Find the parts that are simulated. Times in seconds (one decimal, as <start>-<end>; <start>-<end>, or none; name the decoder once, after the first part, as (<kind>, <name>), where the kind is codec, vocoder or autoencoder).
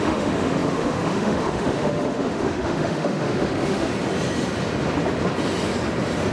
0.0-3.9 (autoencoder, DAC-VAE)